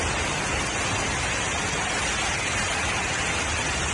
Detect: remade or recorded recorded